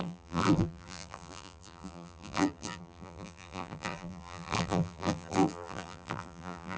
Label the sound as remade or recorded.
remade